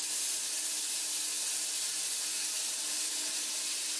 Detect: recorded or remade recorded